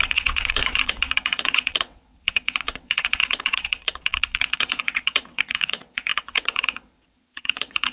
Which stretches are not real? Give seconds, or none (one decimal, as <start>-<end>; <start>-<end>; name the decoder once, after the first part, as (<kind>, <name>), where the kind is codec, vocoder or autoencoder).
0.0-7.9 (vocoder, WaveNeXt)